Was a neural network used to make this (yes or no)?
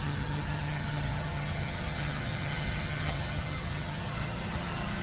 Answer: yes